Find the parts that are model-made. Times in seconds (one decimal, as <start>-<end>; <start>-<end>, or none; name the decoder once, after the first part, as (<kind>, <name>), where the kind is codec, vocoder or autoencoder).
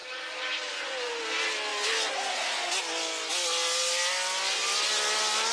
none